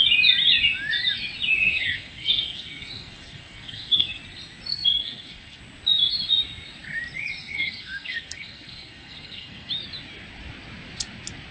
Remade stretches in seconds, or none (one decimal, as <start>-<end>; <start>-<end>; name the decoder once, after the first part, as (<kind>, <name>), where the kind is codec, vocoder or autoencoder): 1.6-4.2 (codec, SNAC); 4.7-5.6; 7.4-9.7

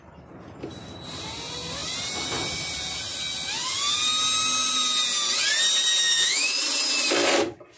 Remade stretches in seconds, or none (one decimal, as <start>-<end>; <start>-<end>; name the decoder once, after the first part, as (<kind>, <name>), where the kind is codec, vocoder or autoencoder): 6.0-6.6 (autoencoder, DAC-VAE)

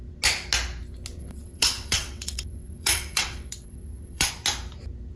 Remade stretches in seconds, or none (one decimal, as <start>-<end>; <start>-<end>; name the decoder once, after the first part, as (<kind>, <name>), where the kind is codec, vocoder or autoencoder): 1.2-4.3 (vocoder, WaveNeXt)

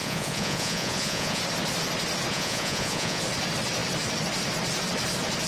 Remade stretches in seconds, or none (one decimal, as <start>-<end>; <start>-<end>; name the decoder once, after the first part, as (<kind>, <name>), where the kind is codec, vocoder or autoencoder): 0.0-1.4 (vocoder, Vocos); 2.3-3.2

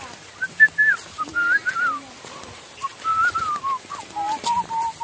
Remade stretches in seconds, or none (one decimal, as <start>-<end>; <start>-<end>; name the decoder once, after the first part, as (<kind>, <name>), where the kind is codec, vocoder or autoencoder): 0.0-1.3 (vocoder, BigVGAN v2); 2.2-5.0

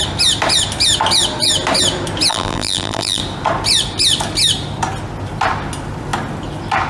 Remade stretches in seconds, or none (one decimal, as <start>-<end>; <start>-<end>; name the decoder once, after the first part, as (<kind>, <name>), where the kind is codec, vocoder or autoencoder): 2.3-3.2 (vocoder, BigVGAN v2)

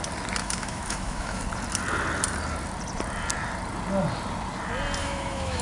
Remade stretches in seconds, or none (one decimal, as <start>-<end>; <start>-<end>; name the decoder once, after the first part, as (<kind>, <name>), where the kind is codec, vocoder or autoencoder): 0.4-1.4 (autoencoder, DAC-VAE); 5.0-5.6